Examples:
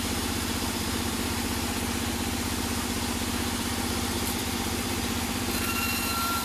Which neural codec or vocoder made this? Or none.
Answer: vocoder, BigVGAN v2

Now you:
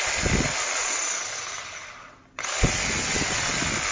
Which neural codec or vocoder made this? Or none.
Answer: none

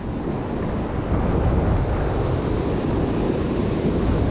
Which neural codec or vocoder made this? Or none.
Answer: none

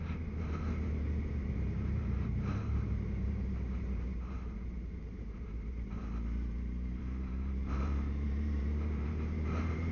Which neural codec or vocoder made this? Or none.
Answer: vocoder, BigVGAN v2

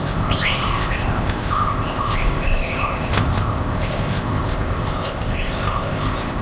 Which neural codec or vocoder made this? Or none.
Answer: codec, ZipCodec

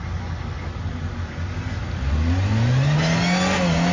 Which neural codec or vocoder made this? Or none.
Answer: none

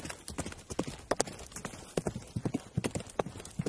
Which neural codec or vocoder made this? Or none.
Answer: none